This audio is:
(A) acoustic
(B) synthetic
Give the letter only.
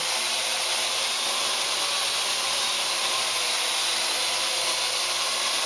A